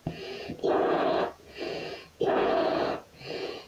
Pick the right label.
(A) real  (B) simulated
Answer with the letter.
B